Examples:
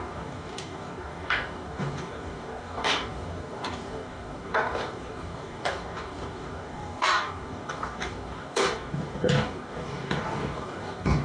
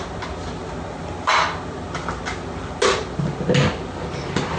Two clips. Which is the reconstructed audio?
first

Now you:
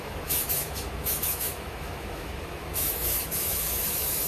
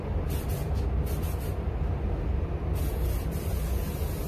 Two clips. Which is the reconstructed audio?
first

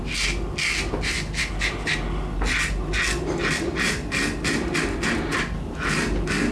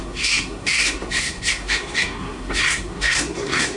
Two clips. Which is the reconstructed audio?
second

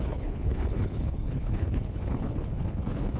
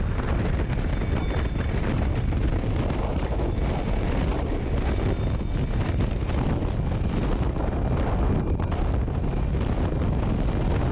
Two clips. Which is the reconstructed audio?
first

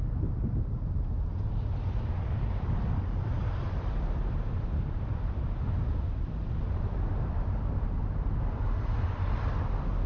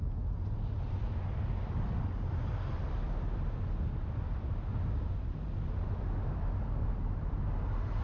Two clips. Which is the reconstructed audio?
first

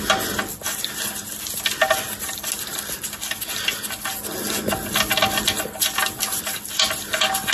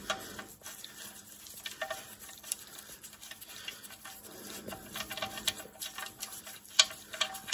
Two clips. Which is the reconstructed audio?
second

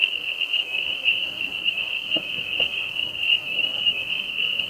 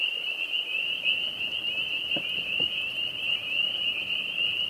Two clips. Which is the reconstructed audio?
first